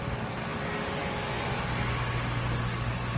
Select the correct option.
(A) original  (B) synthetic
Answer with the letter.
A